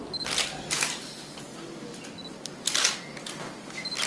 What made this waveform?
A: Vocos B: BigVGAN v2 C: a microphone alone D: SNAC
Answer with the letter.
C